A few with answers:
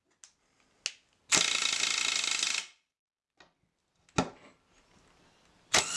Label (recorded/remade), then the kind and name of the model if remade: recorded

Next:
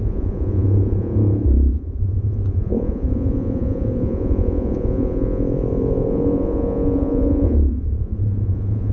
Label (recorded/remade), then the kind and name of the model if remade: remade, vocoder, Vocos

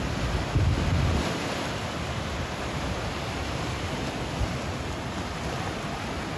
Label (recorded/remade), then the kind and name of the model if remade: recorded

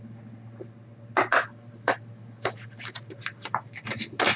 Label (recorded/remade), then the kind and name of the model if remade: recorded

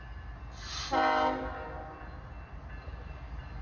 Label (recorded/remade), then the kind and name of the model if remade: recorded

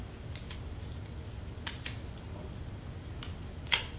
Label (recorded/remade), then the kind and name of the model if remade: recorded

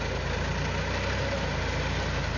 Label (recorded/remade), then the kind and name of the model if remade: recorded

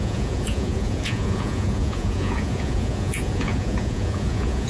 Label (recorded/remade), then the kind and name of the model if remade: remade, vocoder, Vocos